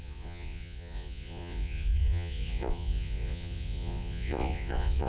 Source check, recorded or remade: remade